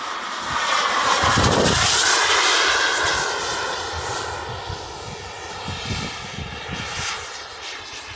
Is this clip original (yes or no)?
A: yes